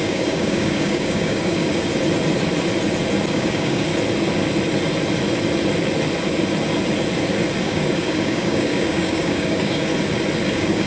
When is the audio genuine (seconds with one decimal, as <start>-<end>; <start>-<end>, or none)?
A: 1.9-3.3; 3.9-7.6; 9.9-10.5